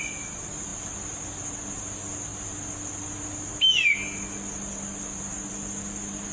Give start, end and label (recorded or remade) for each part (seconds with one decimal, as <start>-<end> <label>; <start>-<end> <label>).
0.0-6.3 recorded